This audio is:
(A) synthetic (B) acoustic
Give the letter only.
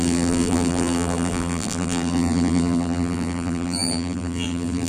A